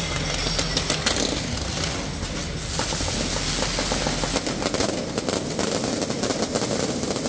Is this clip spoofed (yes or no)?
no